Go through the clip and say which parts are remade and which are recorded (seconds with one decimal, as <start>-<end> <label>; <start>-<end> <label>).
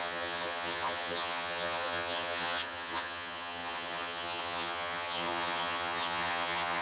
0.0-6.8 remade